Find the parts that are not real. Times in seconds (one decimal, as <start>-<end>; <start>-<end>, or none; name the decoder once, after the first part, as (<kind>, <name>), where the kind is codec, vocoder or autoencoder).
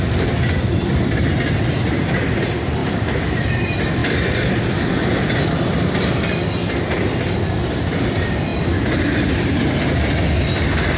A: 2.8-3.4 (vocoder, BigVGAN v2); 8.5-11.0